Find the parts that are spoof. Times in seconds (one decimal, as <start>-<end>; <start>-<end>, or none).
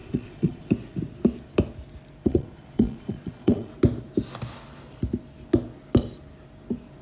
0.0-0.7; 2.2-3.7